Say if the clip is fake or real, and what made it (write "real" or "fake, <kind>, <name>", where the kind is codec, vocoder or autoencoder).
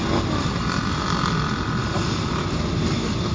real